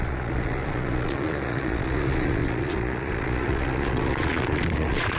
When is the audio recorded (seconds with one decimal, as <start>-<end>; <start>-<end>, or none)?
none